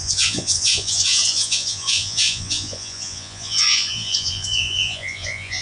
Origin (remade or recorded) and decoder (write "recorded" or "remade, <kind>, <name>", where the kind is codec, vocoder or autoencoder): remade, vocoder, Vocos